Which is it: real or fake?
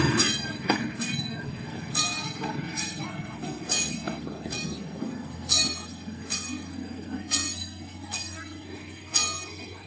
fake